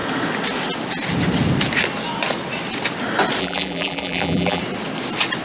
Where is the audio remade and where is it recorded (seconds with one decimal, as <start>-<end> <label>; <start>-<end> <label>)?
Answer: 0.0-3.4 recorded; 3.4-4.6 remade; 4.6-5.4 recorded